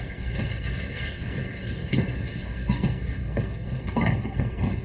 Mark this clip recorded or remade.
remade